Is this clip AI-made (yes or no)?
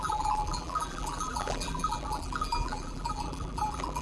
yes